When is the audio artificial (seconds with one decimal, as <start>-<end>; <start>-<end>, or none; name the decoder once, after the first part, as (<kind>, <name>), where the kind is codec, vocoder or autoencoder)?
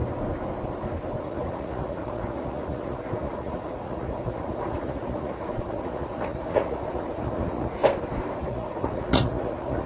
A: 1.2-7.8 (vocoder, Vocos); 8.4-9.9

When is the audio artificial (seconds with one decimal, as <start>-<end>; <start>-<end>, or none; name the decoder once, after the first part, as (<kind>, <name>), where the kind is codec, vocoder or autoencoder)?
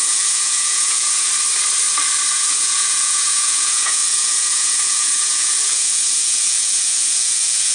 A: 0.0-1.3 (vocoder, Vocos); 2.3-7.7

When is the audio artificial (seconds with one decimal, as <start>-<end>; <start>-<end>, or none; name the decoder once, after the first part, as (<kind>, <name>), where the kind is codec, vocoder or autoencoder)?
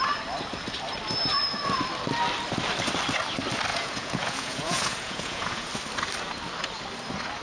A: 3.7-5.7 (vocoder, Vocos)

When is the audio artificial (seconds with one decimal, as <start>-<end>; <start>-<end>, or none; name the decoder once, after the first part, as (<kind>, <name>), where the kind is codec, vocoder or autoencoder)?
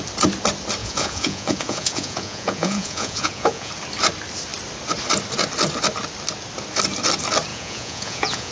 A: 0.8-3.7 (vocoder, Vocos); 7.5-8.5